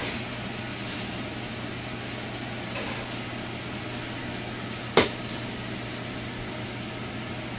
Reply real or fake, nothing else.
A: real